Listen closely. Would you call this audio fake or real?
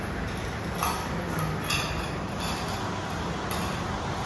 real